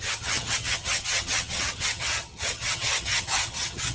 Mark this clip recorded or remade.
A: remade